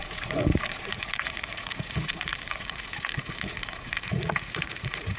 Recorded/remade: remade